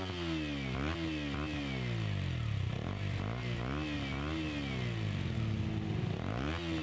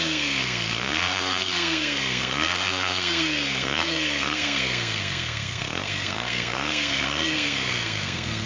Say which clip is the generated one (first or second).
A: second